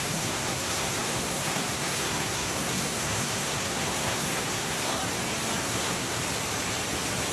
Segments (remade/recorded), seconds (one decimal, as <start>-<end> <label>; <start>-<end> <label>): 0.0-5.0 remade; 5.0-5.6 recorded; 5.6-6.2 remade; 6.2-7.3 recorded